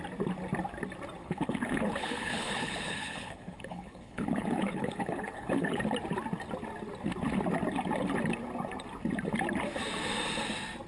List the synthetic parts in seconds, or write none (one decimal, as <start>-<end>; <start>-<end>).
1.2-5.8